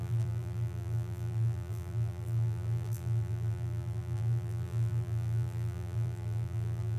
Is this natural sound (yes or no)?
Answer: no